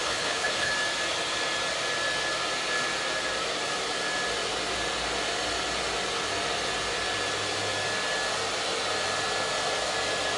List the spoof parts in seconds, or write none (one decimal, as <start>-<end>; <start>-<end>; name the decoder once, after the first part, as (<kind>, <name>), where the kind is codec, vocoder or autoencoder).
0.0-0.7 (codec, HILCodec)